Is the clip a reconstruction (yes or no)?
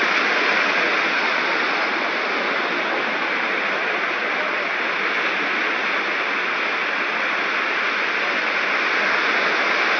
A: no